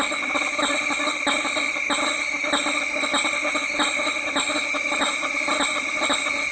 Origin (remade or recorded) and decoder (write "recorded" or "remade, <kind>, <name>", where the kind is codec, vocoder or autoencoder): remade, vocoder, BigVGAN v2